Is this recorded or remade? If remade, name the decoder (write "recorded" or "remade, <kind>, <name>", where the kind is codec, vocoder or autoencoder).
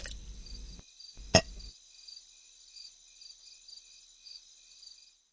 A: recorded